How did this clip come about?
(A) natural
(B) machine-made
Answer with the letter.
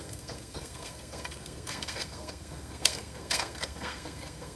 B